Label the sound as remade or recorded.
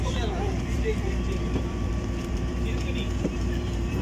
remade